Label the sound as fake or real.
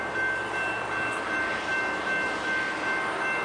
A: real